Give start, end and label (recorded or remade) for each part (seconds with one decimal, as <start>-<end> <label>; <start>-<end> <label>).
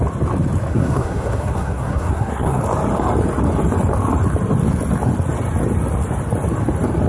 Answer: 0.0-0.7 recorded; 0.7-2.6 remade; 2.6-7.1 recorded